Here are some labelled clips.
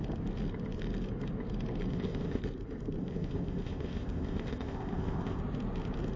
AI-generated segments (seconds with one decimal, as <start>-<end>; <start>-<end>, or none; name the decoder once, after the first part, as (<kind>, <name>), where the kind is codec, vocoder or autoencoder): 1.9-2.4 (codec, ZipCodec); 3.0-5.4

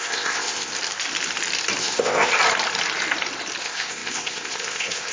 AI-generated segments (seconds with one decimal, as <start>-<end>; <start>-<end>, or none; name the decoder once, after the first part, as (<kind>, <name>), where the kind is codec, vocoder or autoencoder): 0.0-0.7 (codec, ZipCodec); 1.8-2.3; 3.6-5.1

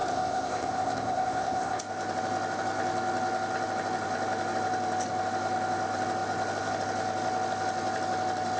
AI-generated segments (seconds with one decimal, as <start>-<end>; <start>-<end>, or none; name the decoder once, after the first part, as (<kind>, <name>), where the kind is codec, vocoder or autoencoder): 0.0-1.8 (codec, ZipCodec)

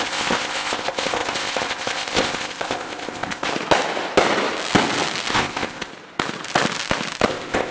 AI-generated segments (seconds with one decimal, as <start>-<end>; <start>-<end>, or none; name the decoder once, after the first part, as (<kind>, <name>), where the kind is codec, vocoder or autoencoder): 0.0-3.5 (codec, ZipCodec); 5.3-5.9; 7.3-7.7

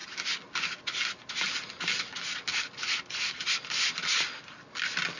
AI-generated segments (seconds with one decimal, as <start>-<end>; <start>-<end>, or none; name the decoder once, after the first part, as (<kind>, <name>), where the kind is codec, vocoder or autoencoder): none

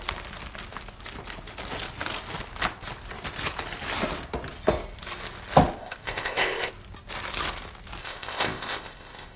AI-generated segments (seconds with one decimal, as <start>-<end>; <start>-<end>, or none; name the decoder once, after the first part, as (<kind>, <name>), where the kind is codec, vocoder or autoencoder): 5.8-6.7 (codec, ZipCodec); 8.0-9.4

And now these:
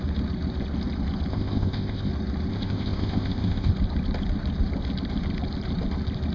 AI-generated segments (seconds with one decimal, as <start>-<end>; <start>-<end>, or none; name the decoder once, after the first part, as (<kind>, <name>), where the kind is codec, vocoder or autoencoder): 1.3-2.1 (codec, ZipCodec); 2.5-3.7

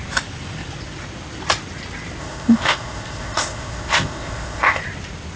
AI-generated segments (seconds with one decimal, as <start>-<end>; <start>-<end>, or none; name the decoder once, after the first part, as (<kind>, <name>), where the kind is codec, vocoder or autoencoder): 2.2-4.8 (codec, ZipCodec)